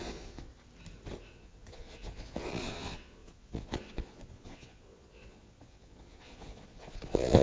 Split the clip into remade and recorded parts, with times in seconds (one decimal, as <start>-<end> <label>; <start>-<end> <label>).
0.0-0.5 remade; 0.5-1.3 recorded; 1.3-7.4 remade